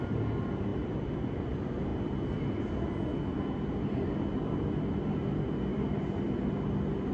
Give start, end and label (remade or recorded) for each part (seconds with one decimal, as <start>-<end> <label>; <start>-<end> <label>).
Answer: 0.0-7.1 recorded